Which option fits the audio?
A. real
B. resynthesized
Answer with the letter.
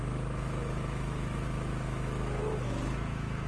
B